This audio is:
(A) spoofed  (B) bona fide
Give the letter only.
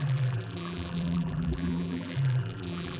A